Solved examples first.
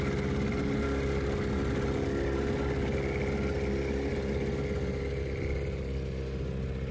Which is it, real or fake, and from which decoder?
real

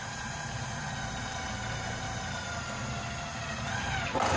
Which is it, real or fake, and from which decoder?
real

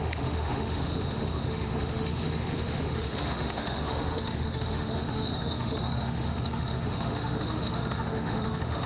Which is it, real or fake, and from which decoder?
fake, autoencoder, DAC-VAE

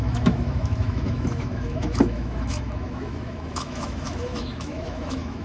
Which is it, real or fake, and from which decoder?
fake, autoencoder, DAC-VAE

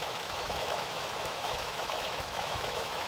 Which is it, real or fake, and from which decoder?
fake, autoencoder, DAC-VAE